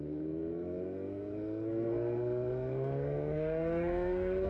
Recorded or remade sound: remade